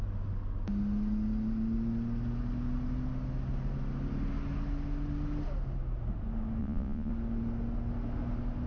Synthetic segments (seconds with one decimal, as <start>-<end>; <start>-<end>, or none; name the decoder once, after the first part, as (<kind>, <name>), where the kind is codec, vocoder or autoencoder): 6.6-7.1 (vocoder, Vocos)